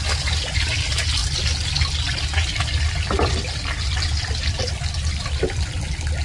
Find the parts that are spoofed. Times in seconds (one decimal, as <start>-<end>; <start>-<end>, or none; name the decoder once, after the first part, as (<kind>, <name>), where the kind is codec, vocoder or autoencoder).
none